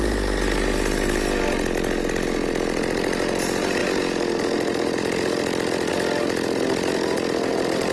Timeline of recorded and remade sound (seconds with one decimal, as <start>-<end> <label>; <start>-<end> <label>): 0.0-7.9 recorded